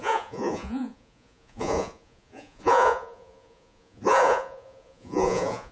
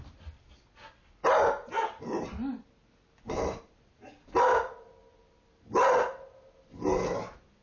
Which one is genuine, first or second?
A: second